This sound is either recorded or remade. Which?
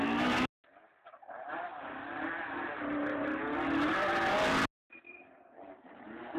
recorded